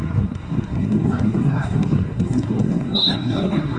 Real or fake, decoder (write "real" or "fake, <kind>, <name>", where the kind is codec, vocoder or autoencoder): fake, codec, SNAC